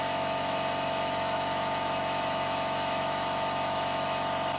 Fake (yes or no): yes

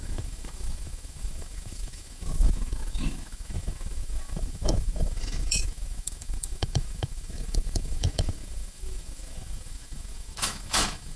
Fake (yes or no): yes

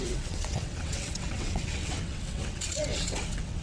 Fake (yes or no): yes